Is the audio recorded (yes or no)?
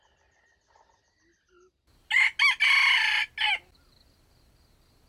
yes